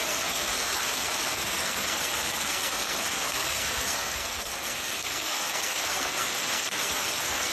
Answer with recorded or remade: remade